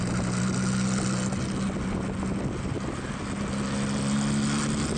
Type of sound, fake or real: real